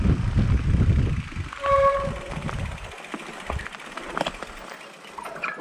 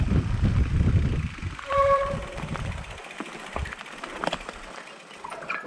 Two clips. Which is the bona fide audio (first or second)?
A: first